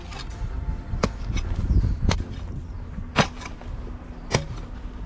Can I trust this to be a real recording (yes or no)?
yes